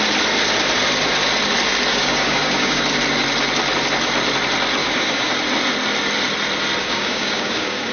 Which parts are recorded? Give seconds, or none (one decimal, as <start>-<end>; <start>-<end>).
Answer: 0.0-1.9; 2.8-4.8; 5.3-6.8